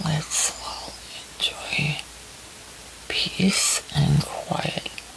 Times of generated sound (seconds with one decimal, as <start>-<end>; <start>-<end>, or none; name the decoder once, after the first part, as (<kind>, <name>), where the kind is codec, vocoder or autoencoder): none